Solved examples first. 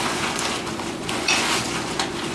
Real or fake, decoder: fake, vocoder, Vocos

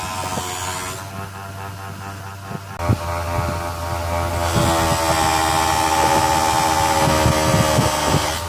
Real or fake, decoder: real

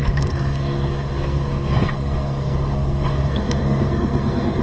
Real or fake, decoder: fake, codec, SNAC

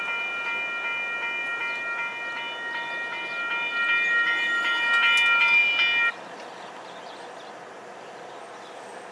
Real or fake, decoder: real